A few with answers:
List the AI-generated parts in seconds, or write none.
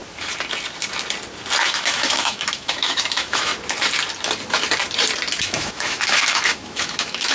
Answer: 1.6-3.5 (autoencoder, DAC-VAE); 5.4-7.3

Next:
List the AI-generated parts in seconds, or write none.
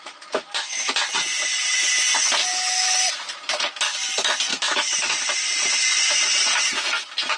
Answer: 2.5-3.1 (autoencoder, DAC-VAE); 4.5-5.0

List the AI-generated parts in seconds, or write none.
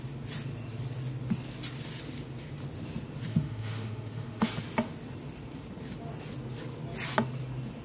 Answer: 3.3-4.5 (autoencoder, DAC-VAE)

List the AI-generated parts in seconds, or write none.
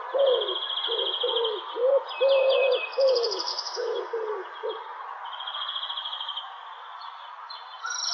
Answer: 3.5-4.0 (autoencoder, DAC-VAE); 6.0-6.5